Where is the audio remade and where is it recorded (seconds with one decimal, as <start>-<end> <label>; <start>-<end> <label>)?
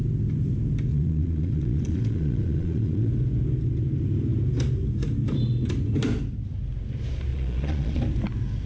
0.0-0.9 recorded; 0.9-3.1 remade; 3.1-7.3 recorded; 7.3-8.0 remade; 8.0-8.7 recorded